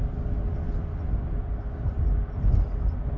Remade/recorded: recorded